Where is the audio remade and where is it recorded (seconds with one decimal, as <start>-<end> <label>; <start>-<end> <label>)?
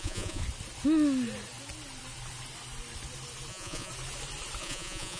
0.0-0.4 remade; 0.4-3.5 recorded; 3.5-3.9 remade; 3.9-4.6 recorded; 4.6-5.2 remade